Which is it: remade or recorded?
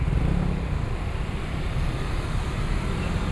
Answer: recorded